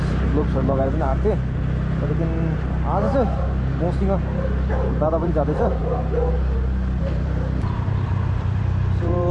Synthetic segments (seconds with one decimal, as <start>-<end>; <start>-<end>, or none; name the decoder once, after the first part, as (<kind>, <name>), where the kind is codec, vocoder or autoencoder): 0.0-1.1 (vocoder, BigVGAN v2); 4.7-5.8; 7.0-9.3